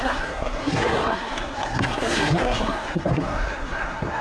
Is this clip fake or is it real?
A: fake